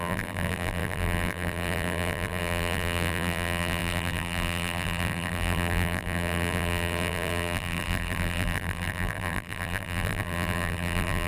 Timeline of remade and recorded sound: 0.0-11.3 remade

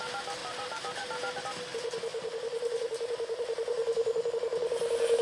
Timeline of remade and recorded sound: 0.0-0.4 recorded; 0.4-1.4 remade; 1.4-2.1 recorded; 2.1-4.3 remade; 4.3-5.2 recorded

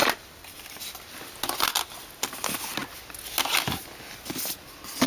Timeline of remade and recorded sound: 0.0-0.8 remade; 0.8-5.1 recorded